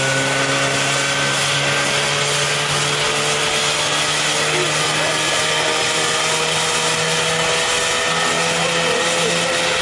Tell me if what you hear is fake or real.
real